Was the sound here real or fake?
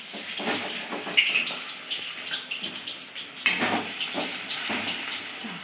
real